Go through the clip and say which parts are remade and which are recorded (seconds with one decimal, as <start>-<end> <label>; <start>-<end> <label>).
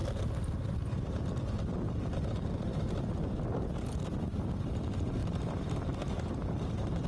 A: 0.0-5.2 recorded; 5.2-7.1 remade